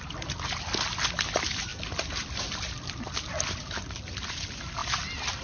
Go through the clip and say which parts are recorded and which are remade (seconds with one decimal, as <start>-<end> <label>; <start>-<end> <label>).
0.0-5.4 recorded